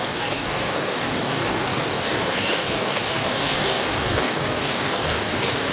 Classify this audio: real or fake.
fake